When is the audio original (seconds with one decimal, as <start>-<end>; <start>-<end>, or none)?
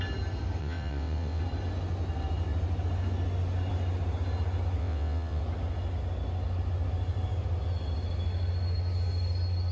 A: 0.0-0.6; 1.4-4.8; 5.4-9.7